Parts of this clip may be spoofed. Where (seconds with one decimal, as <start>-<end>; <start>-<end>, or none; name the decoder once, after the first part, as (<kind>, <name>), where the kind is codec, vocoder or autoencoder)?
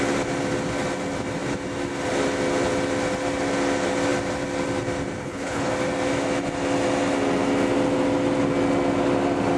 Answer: 5.2-5.7 (codec, HILCodec)